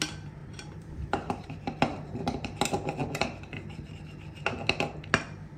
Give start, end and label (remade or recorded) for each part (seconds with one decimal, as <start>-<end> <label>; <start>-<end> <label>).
0.0-0.4 recorded; 0.4-1.5 remade; 1.5-1.9 recorded; 1.9-2.6 remade; 2.6-5.6 recorded